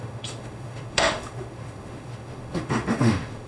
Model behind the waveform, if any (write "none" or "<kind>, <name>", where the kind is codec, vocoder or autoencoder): autoencoder, DAC-VAE